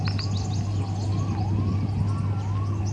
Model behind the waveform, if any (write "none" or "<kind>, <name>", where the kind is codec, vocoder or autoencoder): none